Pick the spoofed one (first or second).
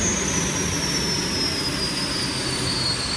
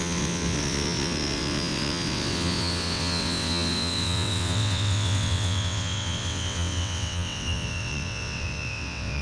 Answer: second